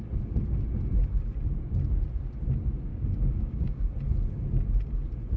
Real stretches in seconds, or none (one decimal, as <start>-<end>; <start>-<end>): 0.0-2.9; 3.9-5.4